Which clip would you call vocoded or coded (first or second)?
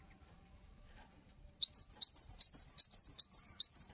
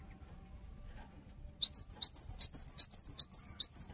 first